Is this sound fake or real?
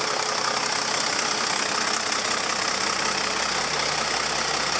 real